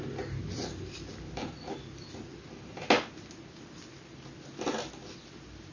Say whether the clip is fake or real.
real